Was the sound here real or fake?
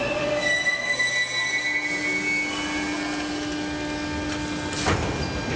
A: real